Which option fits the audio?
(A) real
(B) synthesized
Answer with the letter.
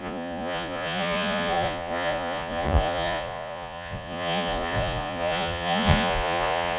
B